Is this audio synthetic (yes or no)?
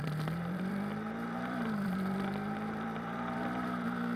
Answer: yes